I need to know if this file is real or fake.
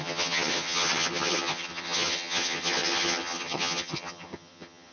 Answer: fake